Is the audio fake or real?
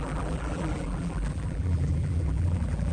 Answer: fake